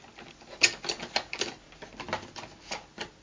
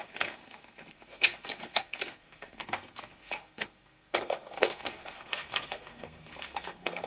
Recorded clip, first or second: first